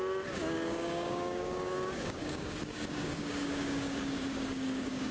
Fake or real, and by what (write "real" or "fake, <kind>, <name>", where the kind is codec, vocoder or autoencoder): fake, codec, DAC